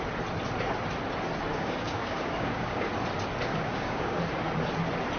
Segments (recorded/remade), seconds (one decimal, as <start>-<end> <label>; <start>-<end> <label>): 0.0-1.5 recorded; 1.5-2.9 remade; 2.9-3.5 recorded; 3.5-4.2 remade; 4.2-5.2 recorded